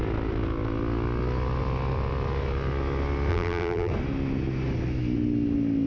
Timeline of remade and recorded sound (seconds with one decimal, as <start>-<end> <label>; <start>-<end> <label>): 0.0-3.3 recorded; 3.3-3.9 remade; 3.9-5.9 recorded